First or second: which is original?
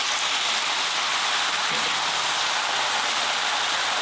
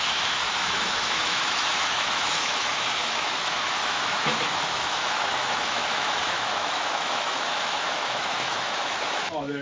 first